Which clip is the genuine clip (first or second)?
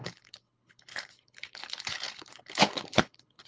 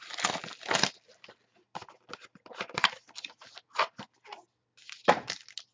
second